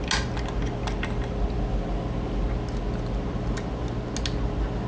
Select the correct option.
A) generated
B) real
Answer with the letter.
B